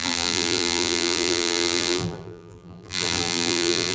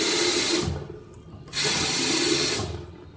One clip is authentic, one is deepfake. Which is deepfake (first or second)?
first